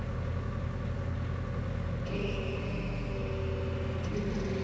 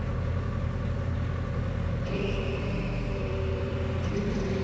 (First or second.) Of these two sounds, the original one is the first